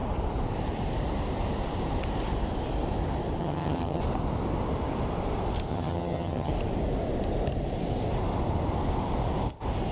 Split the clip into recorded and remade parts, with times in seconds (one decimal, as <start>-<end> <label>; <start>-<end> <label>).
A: 0.0-3.4 recorded; 3.4-4.0 remade; 4.0-5.7 recorded; 5.7-6.5 remade; 6.5-9.9 recorded